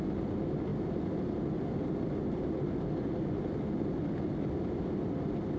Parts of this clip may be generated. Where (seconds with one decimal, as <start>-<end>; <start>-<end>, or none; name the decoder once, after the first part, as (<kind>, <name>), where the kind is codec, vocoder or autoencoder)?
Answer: none